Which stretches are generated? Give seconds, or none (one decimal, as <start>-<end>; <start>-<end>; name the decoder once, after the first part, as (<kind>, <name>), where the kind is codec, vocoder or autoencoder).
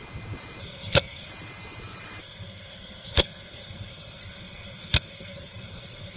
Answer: 0.6-1.3 (codec, SNAC); 2.2-6.2